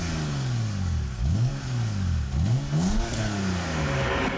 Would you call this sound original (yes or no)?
no